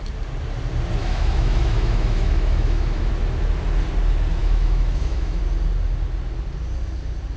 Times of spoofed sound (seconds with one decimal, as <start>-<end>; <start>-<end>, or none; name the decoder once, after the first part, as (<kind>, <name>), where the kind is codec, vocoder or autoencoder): 1.0-3.1 (autoencoder, DAC-VAE); 4.4-5.4